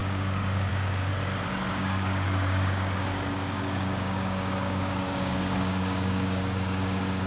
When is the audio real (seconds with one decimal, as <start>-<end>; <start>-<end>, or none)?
1.1-1.7